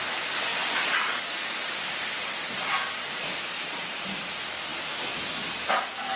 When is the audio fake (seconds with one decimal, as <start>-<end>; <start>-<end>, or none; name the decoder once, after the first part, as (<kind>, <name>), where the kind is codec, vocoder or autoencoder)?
0.5-4.2 (vocoder, BigVGAN v2)